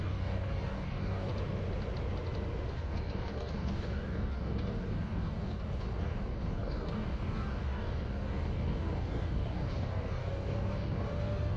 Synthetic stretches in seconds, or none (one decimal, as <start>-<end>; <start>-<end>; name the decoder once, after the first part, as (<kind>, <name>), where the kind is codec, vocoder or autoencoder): 0.0-1.3 (codec, DAC); 2.7-11.6